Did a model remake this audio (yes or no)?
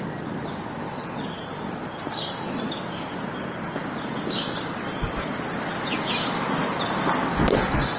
no